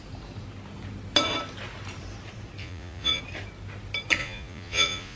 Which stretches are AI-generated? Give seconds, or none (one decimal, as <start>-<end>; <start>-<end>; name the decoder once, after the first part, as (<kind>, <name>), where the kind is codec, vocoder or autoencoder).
2.6-3.2 (vocoder, Vocos); 4.2-5.2